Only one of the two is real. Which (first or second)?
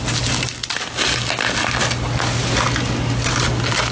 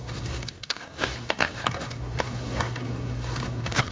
first